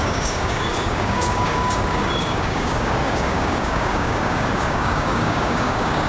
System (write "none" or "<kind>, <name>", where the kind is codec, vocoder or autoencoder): codec, DAC